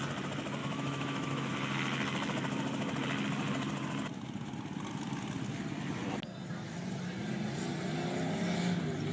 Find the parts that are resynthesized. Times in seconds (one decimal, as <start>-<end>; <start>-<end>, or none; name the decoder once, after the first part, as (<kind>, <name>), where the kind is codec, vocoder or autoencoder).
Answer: 0.6-1.5 (autoencoder, DAC-VAE)